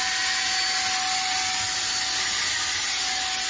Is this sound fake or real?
real